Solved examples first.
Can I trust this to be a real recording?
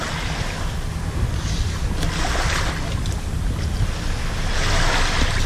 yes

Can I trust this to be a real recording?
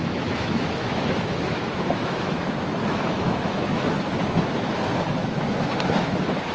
no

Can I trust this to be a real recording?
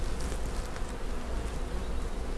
yes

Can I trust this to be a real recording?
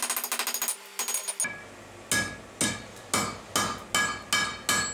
yes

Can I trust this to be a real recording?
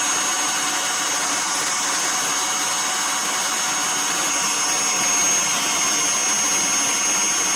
yes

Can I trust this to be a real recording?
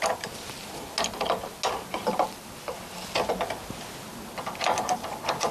yes